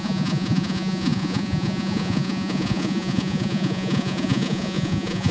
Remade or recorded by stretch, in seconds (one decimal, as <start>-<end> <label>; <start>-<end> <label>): 0.0-5.3 remade